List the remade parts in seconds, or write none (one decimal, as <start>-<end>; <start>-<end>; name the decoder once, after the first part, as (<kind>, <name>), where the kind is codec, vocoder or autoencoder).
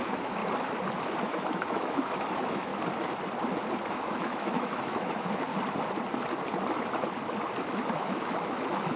0.0-0.4 (autoencoder, DAC-VAE); 1.2-2.7; 3.9-5.5; 7.7-9.0